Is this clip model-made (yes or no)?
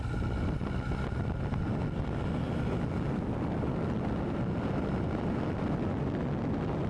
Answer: no